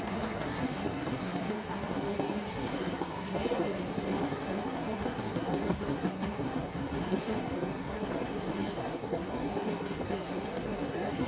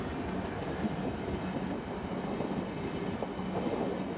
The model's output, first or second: first